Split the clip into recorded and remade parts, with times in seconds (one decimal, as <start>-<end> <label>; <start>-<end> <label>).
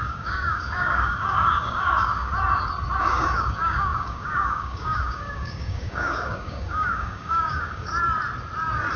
0.0-2.3 remade; 2.3-3.0 recorded; 3.0-7.9 remade; 7.9-9.0 recorded